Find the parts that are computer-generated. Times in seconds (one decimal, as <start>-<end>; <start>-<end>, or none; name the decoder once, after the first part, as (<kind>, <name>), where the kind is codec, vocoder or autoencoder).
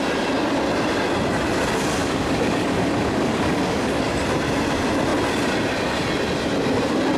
2.0-4.1 (codec, DAC)